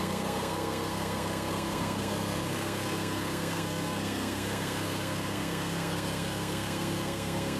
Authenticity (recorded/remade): remade